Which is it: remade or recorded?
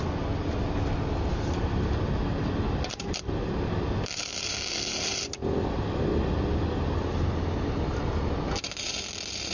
recorded